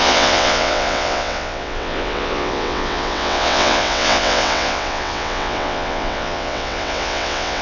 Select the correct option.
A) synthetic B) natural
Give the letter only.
A